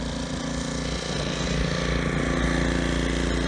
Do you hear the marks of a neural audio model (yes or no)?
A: no